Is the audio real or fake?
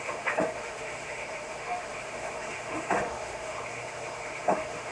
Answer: fake